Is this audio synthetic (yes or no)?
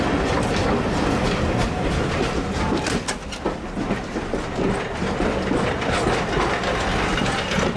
no